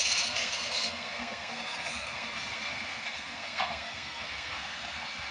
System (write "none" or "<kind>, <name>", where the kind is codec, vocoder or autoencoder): codec, SNAC